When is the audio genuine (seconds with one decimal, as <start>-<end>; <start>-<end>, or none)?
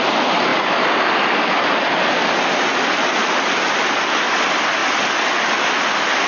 0.0-6.3